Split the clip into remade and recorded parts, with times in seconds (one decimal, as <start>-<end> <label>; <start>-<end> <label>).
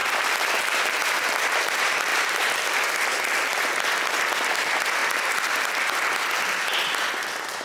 0.0-0.6 remade; 0.6-5.0 recorded; 5.0-5.7 remade; 5.7-7.6 recorded